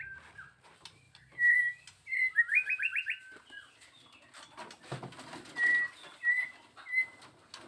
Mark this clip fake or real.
real